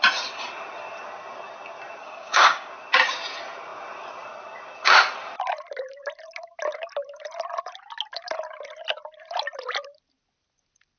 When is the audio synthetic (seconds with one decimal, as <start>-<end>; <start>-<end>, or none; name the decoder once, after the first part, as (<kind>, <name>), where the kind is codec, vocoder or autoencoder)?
2.0-2.7 (codec, DAC)